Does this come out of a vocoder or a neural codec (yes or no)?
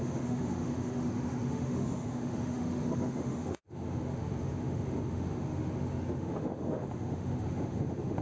yes